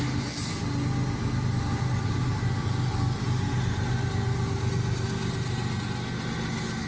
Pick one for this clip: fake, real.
real